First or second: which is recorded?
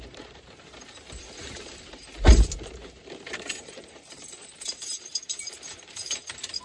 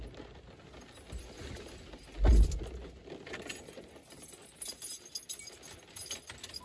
second